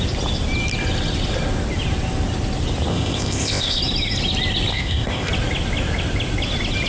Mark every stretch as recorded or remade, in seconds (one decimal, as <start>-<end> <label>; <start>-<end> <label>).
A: 0.0-2.9 recorded; 2.9-3.8 remade; 3.8-4.7 recorded; 4.7-5.3 remade; 5.3-6.9 recorded